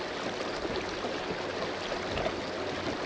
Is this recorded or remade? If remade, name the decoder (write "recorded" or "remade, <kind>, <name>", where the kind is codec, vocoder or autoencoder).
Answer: recorded